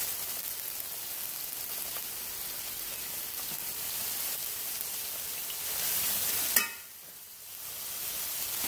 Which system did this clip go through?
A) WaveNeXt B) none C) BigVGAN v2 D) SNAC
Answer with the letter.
B